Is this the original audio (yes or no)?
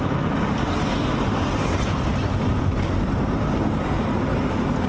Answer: yes